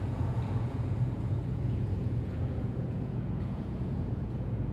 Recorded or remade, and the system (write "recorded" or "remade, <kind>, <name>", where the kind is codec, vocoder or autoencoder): remade, vocoder, Vocos